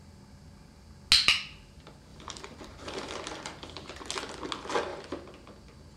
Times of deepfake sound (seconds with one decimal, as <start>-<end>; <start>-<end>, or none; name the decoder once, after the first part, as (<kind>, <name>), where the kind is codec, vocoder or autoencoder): 2.1-4.1 (vocoder, BigVGAN v2); 4.9-6.0